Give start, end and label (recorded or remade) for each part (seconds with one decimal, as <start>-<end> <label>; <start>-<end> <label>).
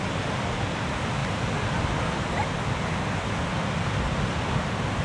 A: 0.0-5.0 recorded